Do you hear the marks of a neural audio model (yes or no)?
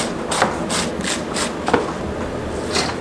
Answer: no